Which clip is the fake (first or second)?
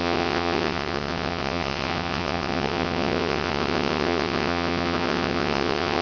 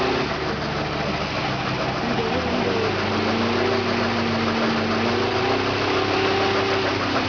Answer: first